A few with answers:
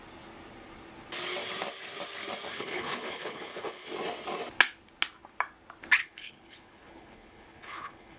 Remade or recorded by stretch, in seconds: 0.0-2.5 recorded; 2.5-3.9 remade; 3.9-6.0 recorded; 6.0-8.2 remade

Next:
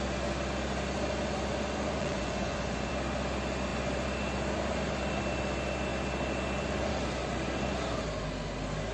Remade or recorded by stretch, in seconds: 0.0-2.0 recorded; 2.0-2.9 remade; 2.9-8.9 recorded

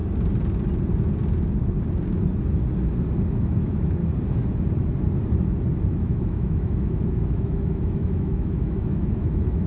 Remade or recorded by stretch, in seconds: 0.0-3.3 recorded; 3.3-4.0 remade; 4.0-5.9 recorded; 5.9-9.7 remade